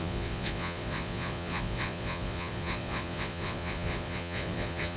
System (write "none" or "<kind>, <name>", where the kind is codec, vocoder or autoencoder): vocoder, Vocos